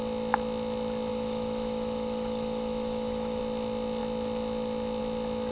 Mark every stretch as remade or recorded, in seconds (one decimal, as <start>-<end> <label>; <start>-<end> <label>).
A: 0.0-1.1 recorded; 1.1-3.4 remade; 3.4-5.5 recorded